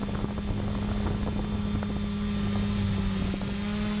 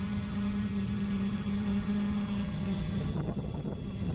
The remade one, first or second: second